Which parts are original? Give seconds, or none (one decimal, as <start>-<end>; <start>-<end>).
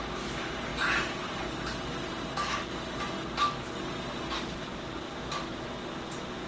0.0-6.5